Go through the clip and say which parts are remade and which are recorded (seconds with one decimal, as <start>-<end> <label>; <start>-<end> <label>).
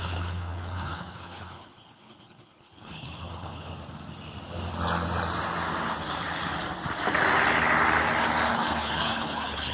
0.0-3.7 remade; 3.7-8.5 recorded; 8.5-9.7 remade